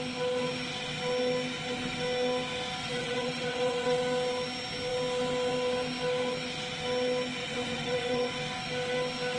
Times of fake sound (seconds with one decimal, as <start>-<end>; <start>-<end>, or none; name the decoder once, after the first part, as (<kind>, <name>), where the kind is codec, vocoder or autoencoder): 2.8-4.0 (vocoder, WaveNeXt); 7.4-8.3